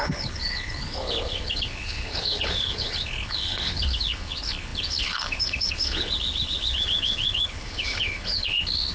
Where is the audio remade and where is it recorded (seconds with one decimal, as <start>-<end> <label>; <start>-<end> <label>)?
0.0-8.9 remade